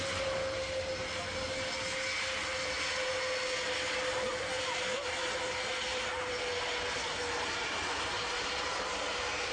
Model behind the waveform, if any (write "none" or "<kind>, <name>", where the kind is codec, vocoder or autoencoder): none